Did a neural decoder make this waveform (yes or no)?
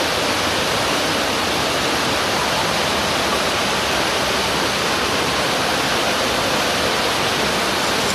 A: no